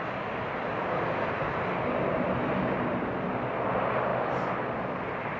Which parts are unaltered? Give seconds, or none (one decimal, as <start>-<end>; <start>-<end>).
0.0-5.4